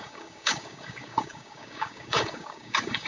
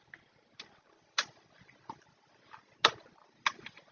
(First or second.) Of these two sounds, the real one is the second